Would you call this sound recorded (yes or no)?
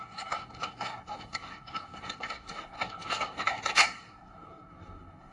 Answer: no